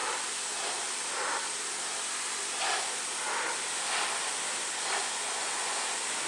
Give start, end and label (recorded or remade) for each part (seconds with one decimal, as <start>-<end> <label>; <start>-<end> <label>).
0.0-5.0 recorded; 5.0-5.8 remade; 5.8-6.3 recorded